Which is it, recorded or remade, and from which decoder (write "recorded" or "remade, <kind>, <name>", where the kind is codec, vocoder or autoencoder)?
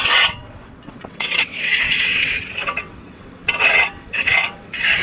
remade, vocoder, WaveNeXt